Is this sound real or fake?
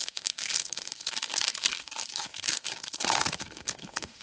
fake